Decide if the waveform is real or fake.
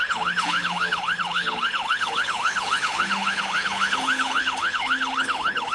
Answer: fake